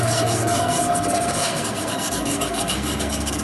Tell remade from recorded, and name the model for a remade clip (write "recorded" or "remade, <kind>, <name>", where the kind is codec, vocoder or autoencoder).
remade, codec, SNAC